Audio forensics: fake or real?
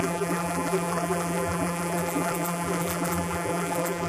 fake